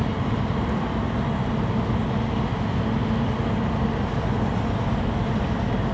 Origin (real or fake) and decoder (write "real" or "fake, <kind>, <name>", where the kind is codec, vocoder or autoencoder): real